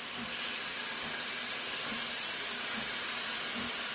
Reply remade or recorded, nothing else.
recorded